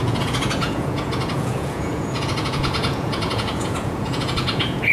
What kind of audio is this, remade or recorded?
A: remade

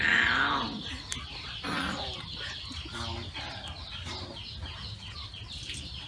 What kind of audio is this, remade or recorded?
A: recorded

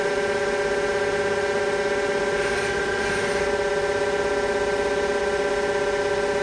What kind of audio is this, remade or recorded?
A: recorded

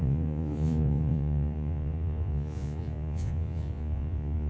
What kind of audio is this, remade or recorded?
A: remade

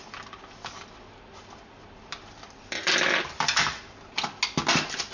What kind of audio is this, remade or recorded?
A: recorded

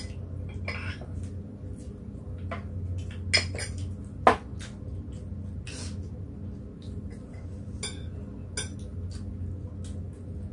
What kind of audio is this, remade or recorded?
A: recorded